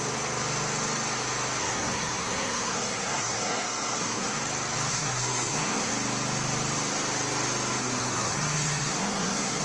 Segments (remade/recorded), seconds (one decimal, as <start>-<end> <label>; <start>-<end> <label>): 0.0-1.6 recorded; 1.6-4.4 remade; 4.4-4.9 recorded; 4.9-5.9 remade; 5.9-7.8 recorded; 7.8-9.6 remade